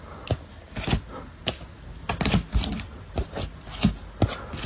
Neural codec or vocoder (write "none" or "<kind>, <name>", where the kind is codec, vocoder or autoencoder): none